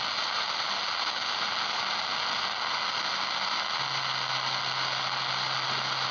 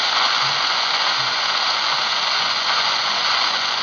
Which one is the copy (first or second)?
second